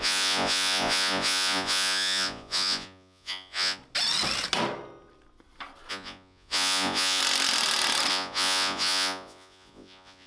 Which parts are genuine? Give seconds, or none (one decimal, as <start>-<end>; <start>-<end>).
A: 3.8-5.9; 7.2-8.1